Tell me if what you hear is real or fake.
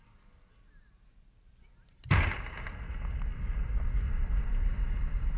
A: real